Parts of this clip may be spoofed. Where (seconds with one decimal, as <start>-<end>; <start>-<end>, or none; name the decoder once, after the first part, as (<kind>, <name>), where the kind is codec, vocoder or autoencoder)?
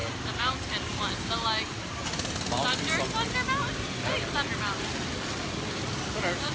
none